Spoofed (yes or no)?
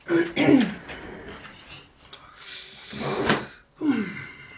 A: no